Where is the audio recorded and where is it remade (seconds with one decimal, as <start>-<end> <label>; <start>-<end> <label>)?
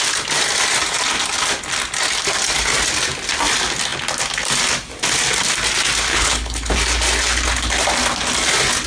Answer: 0.0-6.1 recorded; 6.1-6.7 remade; 6.7-8.9 recorded